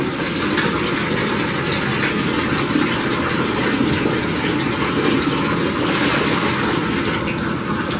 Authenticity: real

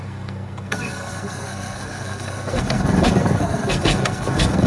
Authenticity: fake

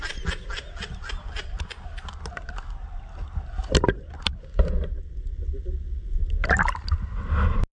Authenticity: real